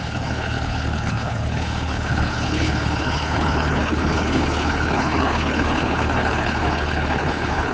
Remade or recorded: remade